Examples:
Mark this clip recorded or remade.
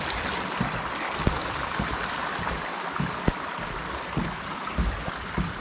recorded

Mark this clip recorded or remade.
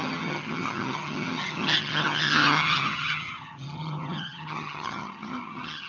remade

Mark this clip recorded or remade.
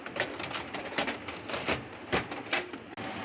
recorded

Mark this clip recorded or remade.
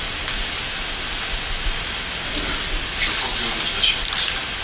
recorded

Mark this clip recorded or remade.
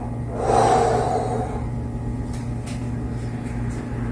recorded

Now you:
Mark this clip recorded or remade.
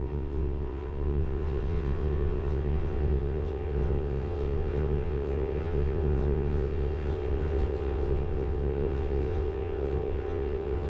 remade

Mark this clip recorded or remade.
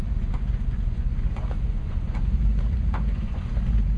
remade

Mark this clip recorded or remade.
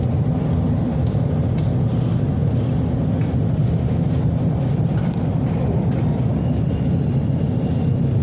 recorded